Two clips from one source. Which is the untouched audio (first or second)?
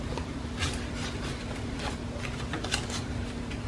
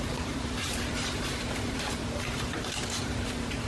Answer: first